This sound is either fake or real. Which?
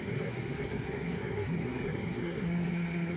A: fake